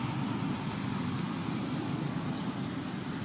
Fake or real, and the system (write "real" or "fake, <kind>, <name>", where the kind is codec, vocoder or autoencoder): real